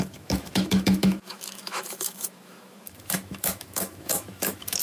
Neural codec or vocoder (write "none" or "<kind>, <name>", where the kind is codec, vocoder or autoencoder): autoencoder, DAC-VAE